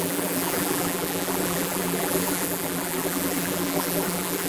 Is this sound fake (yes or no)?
yes